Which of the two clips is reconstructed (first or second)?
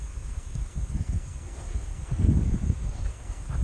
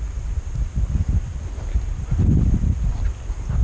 first